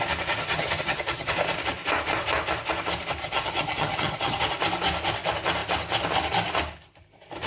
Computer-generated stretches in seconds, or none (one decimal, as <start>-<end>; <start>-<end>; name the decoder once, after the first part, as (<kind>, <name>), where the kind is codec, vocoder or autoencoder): 0.4-1.3 (vocoder, HiFi-GAN); 3.2-4.4